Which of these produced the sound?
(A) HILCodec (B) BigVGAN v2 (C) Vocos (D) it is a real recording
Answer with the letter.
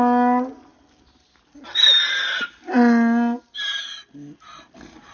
D